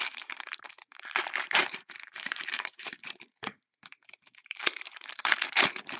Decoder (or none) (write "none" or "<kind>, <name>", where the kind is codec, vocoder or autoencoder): vocoder, BigVGAN v2